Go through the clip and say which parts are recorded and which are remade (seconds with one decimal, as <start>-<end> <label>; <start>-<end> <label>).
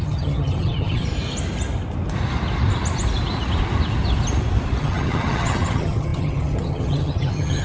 0.0-1.1 remade; 1.1-4.8 recorded; 4.8-7.6 remade